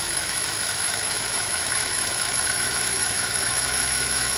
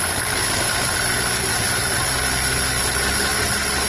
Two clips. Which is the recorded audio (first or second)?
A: second